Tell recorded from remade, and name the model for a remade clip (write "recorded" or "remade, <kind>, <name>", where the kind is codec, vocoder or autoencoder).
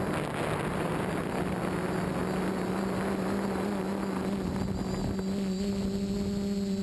recorded